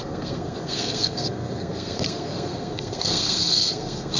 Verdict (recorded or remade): remade